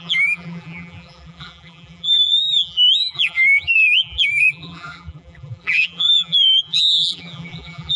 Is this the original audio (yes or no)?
no